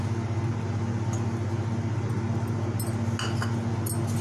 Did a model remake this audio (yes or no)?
no